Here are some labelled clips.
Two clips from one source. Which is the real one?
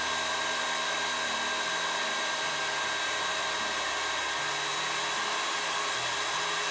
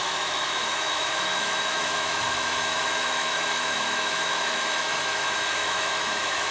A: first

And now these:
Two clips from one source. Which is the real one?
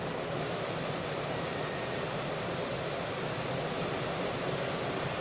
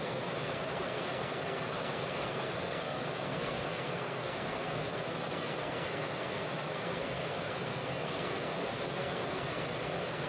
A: first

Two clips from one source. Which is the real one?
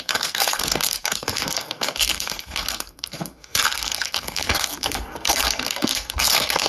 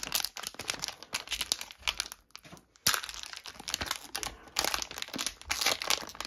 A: second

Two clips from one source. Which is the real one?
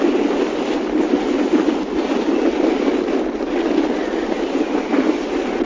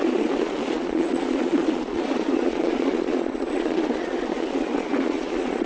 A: first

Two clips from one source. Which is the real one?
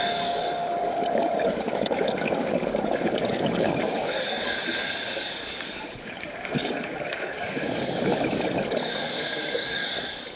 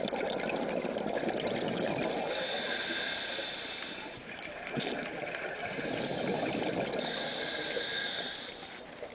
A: second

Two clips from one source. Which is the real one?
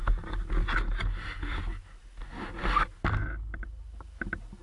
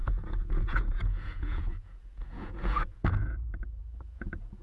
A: first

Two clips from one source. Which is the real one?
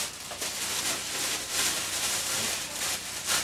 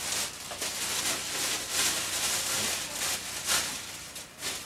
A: second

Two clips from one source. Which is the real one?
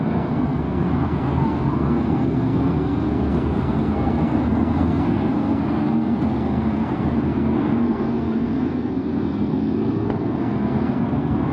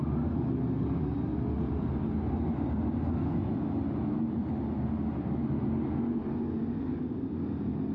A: second